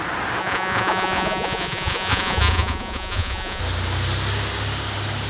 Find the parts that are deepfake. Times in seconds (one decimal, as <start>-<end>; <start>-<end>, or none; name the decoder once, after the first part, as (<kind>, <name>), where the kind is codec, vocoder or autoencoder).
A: 0.4-3.6 (vocoder, Vocos)